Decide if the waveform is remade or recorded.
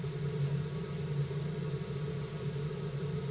recorded